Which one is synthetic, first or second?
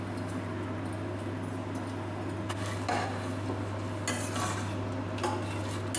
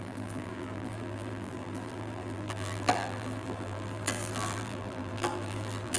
second